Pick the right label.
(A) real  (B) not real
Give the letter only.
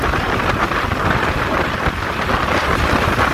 A